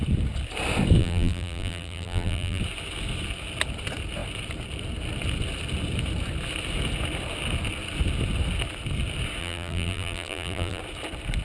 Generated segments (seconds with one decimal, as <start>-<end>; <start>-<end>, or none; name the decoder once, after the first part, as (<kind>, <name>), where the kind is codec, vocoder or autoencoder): 1.0-2.6 (vocoder, BigVGAN v2); 9.4-10.8